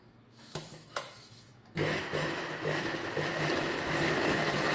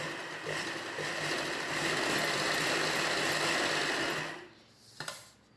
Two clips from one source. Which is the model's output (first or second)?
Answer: first